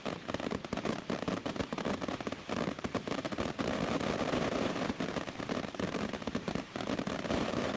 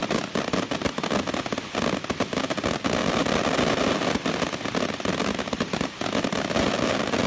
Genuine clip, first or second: second